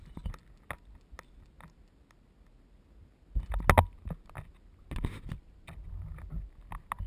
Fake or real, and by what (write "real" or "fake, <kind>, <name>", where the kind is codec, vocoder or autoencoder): real